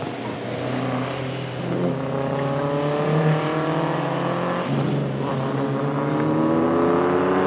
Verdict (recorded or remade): recorded